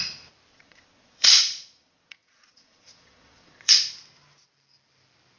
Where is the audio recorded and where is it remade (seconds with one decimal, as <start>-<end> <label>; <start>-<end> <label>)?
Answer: 0.0-0.5 recorded; 0.5-3.7 remade; 3.7-5.4 recorded